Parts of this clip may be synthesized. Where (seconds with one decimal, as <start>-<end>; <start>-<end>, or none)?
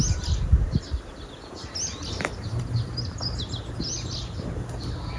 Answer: none